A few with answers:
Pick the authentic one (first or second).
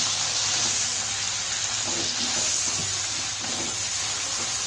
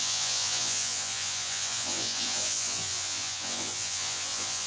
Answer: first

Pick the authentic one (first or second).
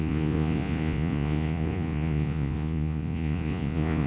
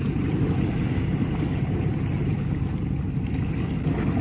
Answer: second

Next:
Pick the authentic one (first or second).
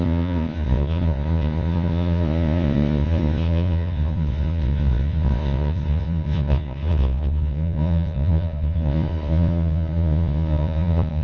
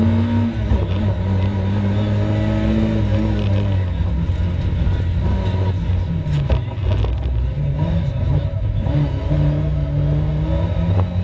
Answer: second